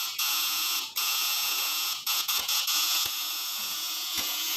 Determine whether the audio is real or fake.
fake